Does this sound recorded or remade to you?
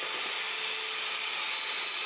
recorded